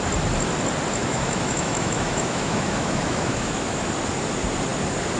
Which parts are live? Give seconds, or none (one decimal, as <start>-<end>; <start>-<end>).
0.0-1.0; 3.9-5.2